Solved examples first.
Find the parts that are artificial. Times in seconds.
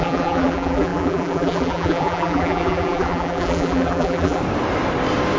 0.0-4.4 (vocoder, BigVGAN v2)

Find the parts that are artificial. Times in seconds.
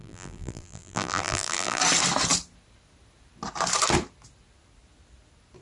0.0-1.8 (vocoder, BigVGAN v2)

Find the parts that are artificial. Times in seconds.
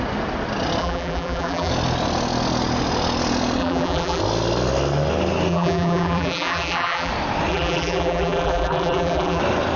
0.8-1.7 (vocoder, BigVGAN v2); 3.6-4.2; 5.5-7.1; 7.5-9.4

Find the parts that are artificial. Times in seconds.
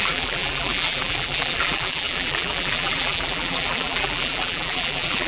0.0-5.3 (vocoder, BigVGAN v2)